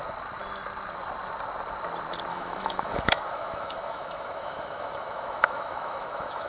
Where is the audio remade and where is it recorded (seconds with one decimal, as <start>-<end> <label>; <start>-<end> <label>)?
0.0-2.3 recorded; 2.3-6.5 remade